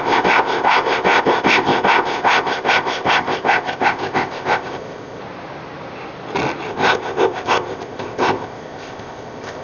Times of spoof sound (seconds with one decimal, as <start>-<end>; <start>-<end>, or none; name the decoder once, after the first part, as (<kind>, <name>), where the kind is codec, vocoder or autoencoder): 0.0-5.2 (codec, ZipCodec); 6.7-9.6